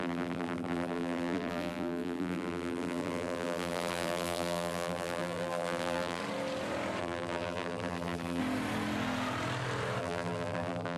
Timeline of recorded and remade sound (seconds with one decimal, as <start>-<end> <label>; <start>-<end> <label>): 0.0-6.2 remade; 6.2-7.0 recorded; 7.0-8.4 remade; 8.4-10.0 recorded; 10.0-11.0 remade